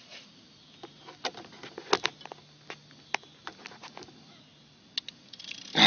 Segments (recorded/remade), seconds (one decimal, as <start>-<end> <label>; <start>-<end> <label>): 0.0-5.9 recorded